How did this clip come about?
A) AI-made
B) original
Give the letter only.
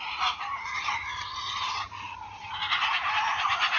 B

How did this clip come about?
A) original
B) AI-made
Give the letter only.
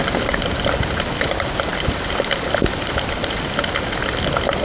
B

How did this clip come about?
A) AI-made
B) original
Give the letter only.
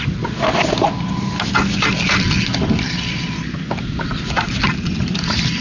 B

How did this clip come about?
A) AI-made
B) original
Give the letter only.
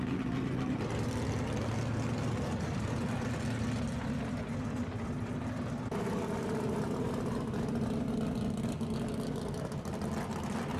B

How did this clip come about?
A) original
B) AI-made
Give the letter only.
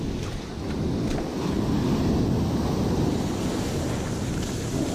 A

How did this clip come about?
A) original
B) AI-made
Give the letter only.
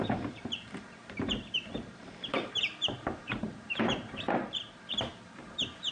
B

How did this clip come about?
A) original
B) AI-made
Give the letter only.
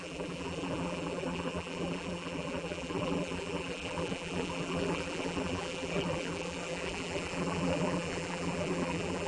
B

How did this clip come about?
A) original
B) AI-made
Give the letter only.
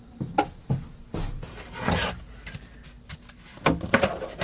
A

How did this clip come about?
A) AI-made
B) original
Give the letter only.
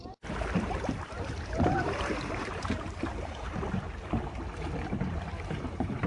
A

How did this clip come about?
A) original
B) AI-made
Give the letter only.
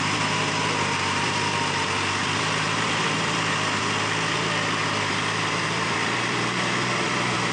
B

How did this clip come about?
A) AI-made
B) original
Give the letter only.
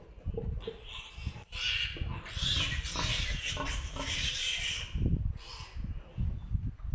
B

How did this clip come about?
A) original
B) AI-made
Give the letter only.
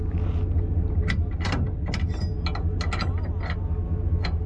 A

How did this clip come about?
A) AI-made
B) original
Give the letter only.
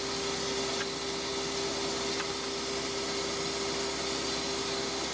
B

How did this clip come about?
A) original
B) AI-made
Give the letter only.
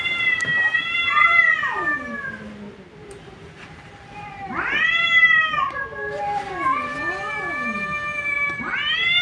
B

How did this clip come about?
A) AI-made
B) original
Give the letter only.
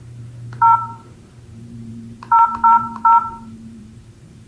A